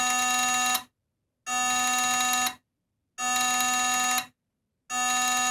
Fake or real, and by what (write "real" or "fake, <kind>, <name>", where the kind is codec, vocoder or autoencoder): real